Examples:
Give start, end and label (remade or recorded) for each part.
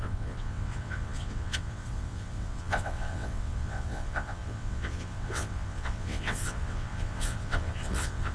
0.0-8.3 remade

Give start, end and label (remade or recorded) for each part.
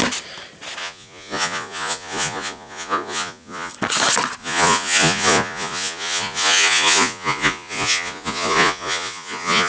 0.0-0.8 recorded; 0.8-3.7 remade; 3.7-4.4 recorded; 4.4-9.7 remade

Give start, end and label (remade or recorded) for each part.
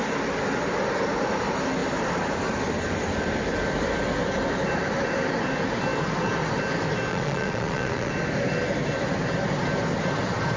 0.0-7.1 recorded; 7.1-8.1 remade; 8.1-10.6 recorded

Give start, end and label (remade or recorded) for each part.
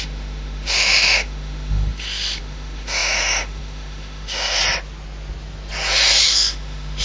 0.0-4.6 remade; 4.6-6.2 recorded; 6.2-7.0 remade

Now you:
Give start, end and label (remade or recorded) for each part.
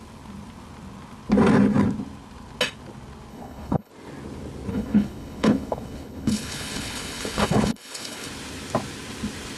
0.0-3.3 recorded; 3.3-3.9 remade; 3.9-4.7 recorded; 4.7-8.3 remade; 8.3-9.6 recorded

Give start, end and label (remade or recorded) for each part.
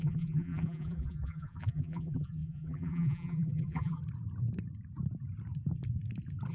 0.0-4.0 remade; 4.0-6.5 recorded